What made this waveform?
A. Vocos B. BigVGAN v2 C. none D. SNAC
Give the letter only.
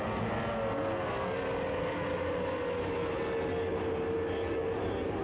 C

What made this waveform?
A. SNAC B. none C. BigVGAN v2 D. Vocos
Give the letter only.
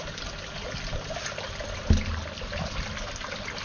B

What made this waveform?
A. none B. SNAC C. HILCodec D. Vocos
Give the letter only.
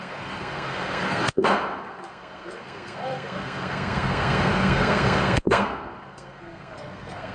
B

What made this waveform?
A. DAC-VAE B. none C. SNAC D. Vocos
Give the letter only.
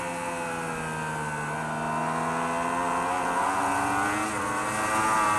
B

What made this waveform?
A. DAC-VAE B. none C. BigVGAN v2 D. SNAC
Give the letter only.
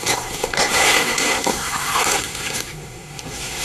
D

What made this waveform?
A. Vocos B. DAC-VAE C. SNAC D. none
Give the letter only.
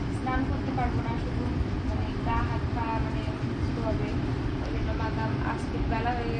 D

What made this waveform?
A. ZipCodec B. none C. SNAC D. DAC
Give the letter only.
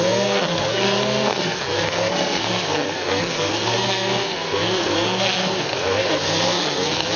C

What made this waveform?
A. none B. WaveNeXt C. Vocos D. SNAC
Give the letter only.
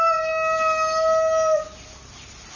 A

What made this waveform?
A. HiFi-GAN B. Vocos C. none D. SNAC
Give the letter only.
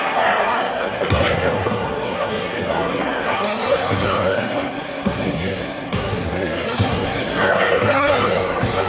D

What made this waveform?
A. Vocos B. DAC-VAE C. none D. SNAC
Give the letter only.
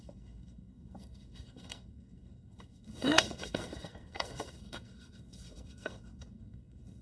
D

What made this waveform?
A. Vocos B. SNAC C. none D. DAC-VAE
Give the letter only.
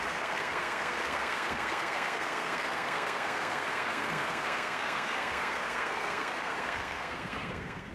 B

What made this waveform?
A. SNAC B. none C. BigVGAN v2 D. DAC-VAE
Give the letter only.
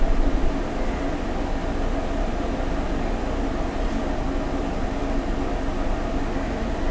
B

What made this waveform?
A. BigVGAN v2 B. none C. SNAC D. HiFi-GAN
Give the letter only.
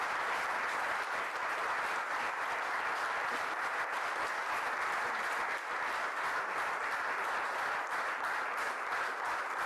B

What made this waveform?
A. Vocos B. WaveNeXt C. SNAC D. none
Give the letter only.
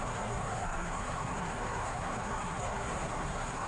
C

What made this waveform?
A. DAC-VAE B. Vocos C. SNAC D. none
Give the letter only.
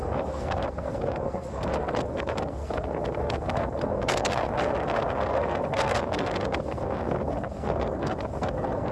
C